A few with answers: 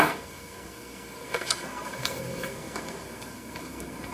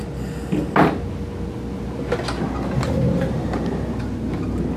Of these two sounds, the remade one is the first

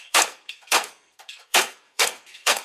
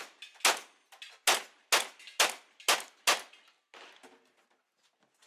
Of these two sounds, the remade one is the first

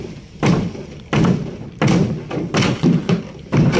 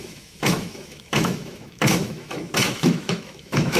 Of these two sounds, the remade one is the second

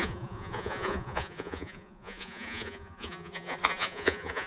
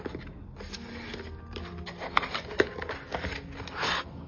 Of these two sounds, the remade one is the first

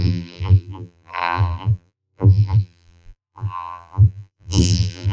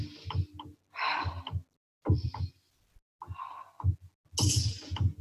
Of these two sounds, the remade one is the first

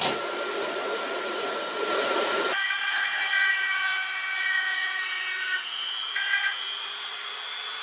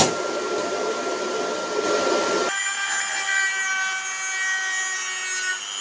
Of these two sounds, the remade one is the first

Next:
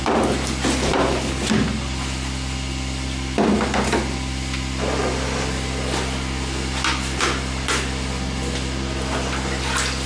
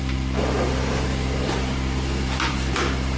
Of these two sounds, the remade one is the second